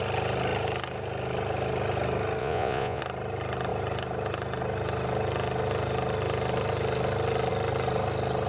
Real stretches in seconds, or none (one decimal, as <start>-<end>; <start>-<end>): 0.0-2.4; 3.0-8.5